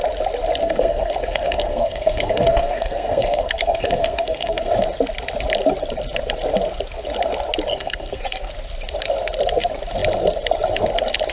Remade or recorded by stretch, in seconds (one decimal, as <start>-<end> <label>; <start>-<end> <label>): 0.0-0.6 recorded; 0.6-4.7 remade; 4.7-7.7 recorded; 7.7-8.5 remade; 8.5-11.3 recorded